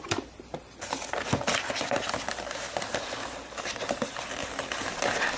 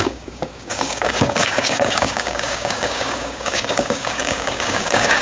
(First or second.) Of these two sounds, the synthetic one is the second